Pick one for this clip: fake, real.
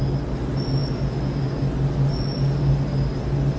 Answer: real